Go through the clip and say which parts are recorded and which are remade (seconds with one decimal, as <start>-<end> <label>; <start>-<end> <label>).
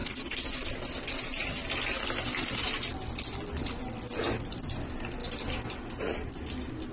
0.0-6.9 recorded